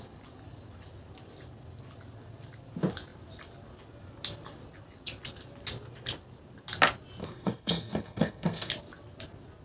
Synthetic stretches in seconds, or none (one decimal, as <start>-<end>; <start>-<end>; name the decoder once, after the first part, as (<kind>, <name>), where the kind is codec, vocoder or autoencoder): 7.2-8.7 (codec, SNAC)